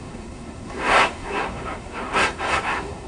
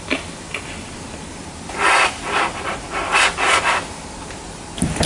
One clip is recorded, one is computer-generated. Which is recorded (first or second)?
second